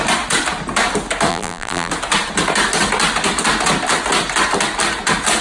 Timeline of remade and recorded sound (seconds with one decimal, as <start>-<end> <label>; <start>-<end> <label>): 0.0-1.3 recorded; 1.3-1.9 remade; 1.9-5.4 recorded

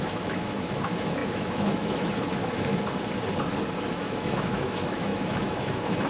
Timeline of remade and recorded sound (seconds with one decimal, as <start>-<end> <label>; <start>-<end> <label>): 0.0-2.7 remade; 2.7-3.9 recorded; 3.9-6.1 remade

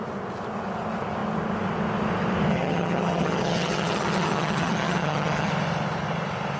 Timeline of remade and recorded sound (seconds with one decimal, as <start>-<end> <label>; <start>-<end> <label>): 0.0-2.5 recorded; 2.5-5.5 remade; 5.5-6.6 recorded

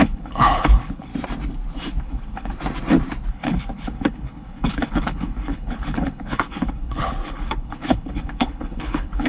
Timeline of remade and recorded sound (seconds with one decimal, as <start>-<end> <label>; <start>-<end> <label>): 0.0-1.1 remade; 1.1-2.0 recorded; 2.0-2.5 remade; 2.5-3.3 recorded; 3.3-9.3 remade

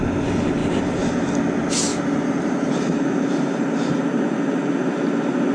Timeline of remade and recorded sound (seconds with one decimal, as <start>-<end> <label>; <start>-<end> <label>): 0.0-0.6 recorded; 0.6-1.1 remade; 1.1-1.9 recorded; 1.9-4.9 remade; 4.9-5.5 recorded

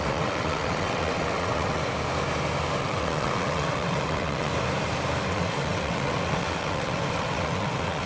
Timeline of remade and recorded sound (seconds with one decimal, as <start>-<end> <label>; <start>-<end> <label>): 0.0-1.8 remade; 1.8-2.8 recorded; 2.8-4.5 remade; 4.5-5.3 recorded; 5.3-8.1 remade